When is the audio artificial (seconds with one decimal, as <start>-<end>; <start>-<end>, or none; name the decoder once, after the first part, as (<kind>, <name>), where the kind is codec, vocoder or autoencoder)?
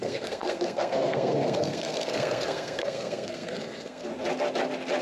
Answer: 0.0-4.1 (codec, SNAC)